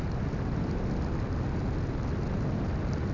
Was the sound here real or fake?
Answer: real